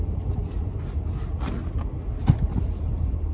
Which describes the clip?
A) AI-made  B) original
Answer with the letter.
B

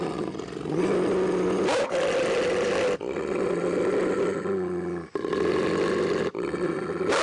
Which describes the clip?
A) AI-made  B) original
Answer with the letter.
B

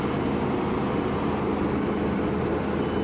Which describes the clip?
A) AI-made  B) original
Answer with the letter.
B